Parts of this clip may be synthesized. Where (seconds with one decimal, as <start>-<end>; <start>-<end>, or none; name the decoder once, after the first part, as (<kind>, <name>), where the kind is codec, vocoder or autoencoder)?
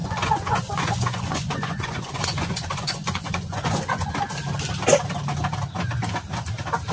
0.0-4.1 (vocoder, Vocos)